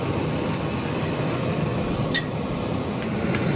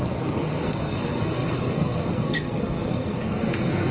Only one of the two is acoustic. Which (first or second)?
first